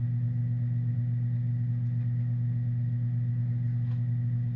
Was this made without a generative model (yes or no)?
yes